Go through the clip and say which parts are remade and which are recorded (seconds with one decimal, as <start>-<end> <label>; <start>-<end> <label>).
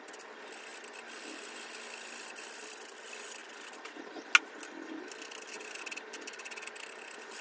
0.0-7.4 recorded